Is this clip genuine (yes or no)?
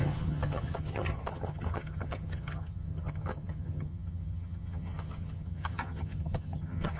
no